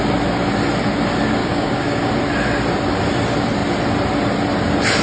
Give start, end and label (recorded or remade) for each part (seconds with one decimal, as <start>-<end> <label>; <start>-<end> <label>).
0.0-1.4 recorded; 1.4-2.1 remade; 2.1-5.0 recorded